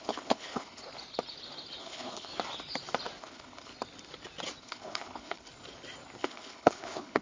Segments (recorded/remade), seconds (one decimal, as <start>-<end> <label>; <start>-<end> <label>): 0.0-0.8 remade; 0.8-1.8 recorded; 1.8-2.3 remade; 2.3-3.2 recorded; 3.2-3.7 remade; 3.7-4.6 recorded; 4.6-5.5 remade; 5.5-6.2 recorded; 6.2-7.2 remade